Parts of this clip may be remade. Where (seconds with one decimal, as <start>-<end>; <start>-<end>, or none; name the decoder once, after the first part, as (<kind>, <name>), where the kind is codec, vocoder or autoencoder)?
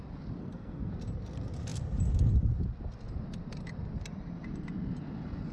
0.4-0.9 (codec, SNAC)